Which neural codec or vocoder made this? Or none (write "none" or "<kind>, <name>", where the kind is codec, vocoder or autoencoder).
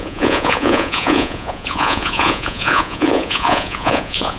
vocoder, Vocos